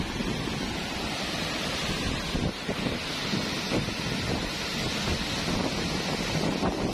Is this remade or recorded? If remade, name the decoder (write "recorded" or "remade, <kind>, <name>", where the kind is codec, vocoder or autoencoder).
recorded